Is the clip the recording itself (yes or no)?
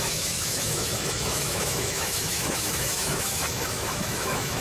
no